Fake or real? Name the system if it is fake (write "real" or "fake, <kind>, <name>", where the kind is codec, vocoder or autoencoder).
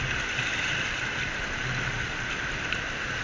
real